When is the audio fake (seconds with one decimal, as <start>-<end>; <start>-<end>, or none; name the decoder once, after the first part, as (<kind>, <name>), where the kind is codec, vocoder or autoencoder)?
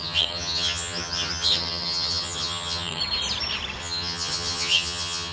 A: 0.0-3.0 (vocoder, HiFi-GAN); 3.8-5.3